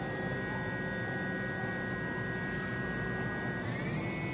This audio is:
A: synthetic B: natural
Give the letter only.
B